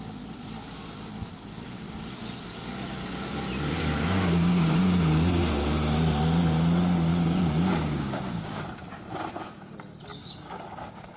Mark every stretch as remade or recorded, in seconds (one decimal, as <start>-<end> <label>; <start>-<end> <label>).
0.0-3.8 recorded; 3.8-4.5 remade; 4.5-7.1 recorded; 7.1-8.6 remade; 8.6-10.1 recorded; 10.1-11.2 remade